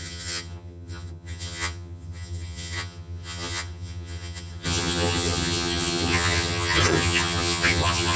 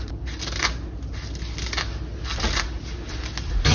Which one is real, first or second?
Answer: second